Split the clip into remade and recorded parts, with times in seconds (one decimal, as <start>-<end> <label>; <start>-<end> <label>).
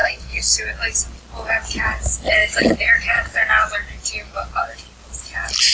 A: 0.0-0.5 remade; 0.5-5.7 recorded